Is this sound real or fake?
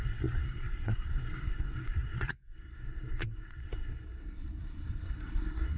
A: fake